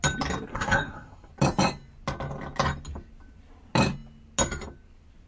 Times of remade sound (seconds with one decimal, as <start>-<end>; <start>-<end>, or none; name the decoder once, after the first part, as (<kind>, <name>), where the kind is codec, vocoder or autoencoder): 0.5-1.3 (codec, SNAC)